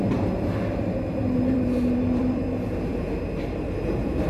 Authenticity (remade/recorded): remade